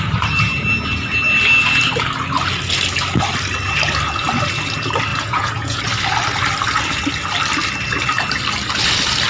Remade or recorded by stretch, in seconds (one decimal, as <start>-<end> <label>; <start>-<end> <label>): 0.0-5.1 recorded; 5.1-5.8 remade; 5.8-9.3 recorded